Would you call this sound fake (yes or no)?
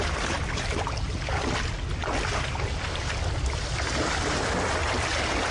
no